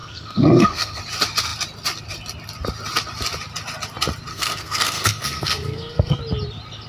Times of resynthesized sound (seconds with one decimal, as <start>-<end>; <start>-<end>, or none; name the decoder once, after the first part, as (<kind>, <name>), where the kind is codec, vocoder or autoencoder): 0.0-1.0 (codec, SNAC); 4.3-6.2